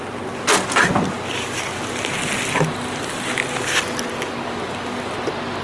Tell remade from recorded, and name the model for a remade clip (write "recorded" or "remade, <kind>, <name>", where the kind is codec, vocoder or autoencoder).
recorded